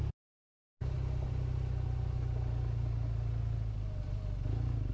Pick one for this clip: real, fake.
real